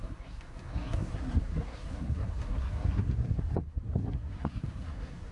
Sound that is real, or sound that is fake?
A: fake